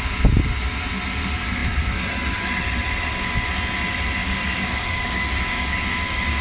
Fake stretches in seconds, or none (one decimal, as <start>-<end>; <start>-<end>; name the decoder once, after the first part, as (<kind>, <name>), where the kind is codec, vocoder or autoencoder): 4.2-6.4 (codec, DAC)